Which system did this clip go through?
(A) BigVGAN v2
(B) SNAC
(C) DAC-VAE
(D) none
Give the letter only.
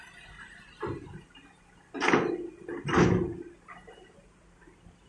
D